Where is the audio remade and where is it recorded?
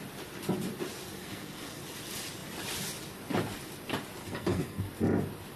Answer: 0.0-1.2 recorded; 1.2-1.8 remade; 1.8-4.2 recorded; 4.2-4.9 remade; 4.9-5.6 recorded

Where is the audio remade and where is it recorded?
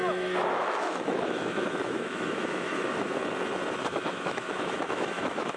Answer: 0.0-3.2 remade; 3.2-3.8 recorded; 3.8-5.6 remade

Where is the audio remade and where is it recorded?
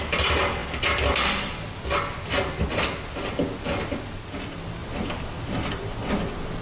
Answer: 0.0-6.6 recorded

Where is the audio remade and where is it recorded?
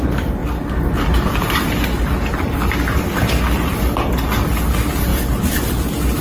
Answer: 0.0-6.2 recorded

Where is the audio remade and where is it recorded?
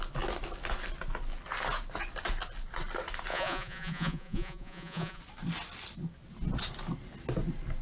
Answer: 0.0-3.3 recorded; 3.3-5.2 remade; 5.2-7.8 recorded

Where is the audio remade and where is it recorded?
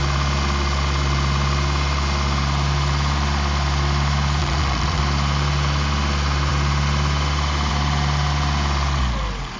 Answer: 0.0-4.4 recorded; 4.4-5.0 remade; 5.0-9.6 recorded